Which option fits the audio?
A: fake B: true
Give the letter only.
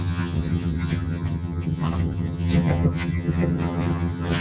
A